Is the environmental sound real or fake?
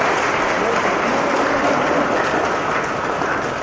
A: real